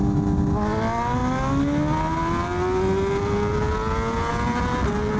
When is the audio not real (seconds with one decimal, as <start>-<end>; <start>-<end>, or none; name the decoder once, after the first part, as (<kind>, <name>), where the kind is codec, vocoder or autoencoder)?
none